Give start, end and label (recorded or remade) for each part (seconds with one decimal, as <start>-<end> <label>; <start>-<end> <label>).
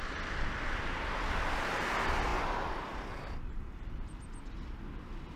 0.0-5.4 recorded